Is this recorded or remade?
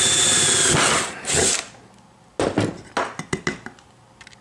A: recorded